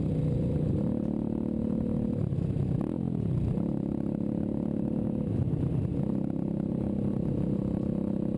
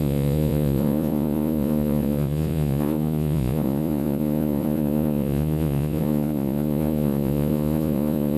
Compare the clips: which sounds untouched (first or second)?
first